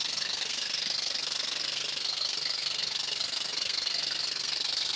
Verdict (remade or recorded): remade